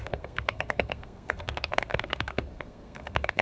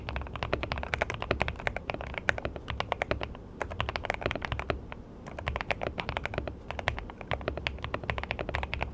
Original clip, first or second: second